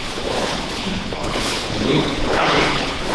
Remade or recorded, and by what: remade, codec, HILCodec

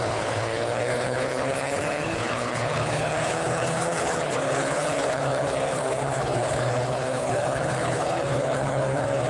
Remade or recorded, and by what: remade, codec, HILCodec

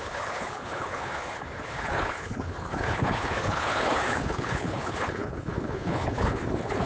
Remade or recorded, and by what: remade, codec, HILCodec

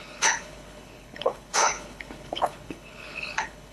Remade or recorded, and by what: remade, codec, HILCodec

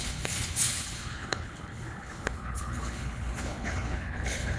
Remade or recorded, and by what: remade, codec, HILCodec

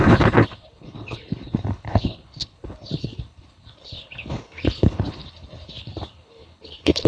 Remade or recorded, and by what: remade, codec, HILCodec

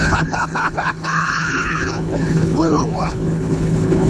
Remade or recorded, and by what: remade, codec, HILCodec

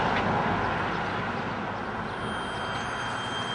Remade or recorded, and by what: recorded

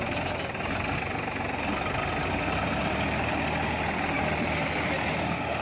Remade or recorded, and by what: recorded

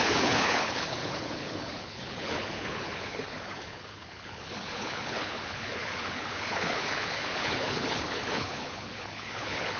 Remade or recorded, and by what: remade, codec, HILCodec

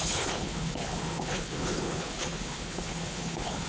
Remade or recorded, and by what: remade, codec, HILCodec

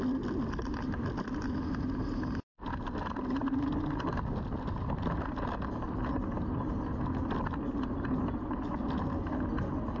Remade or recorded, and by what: recorded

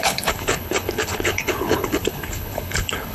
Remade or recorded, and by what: remade, codec, HILCodec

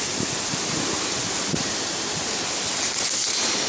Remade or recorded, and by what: recorded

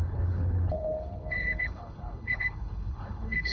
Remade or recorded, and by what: remade, codec, HILCodec